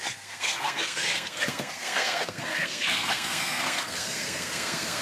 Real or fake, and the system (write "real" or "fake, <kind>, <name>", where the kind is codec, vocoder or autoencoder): fake, codec, SNAC